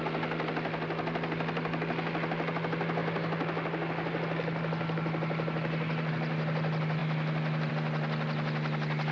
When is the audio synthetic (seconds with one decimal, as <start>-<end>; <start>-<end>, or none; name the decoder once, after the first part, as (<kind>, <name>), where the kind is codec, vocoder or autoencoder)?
none